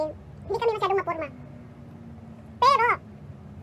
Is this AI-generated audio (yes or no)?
no